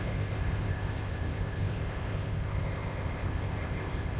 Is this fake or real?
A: fake